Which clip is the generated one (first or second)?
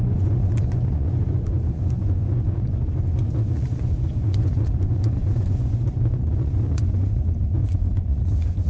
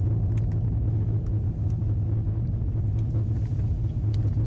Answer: first